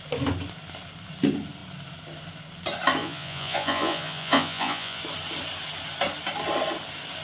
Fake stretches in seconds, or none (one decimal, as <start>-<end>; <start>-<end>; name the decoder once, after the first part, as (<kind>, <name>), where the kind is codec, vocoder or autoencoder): 3.0-5.0 (vocoder, Vocos)